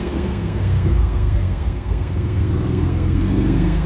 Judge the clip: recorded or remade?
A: remade